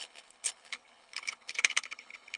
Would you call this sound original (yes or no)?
no